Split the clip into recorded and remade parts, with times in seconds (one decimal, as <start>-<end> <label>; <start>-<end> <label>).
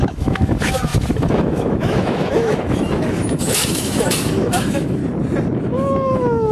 0.0-5.0 remade; 5.0-5.6 recorded; 5.6-6.5 remade